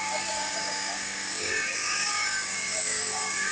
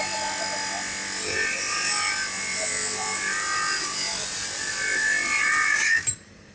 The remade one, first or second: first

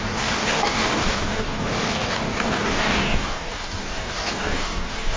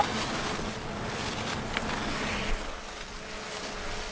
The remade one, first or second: first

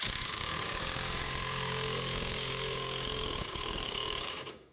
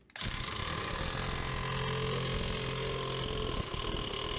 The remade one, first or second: first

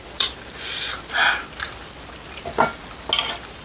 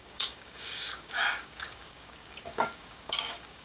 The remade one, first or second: second